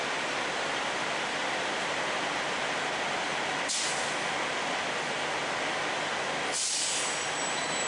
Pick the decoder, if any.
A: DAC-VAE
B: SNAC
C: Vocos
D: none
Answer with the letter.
D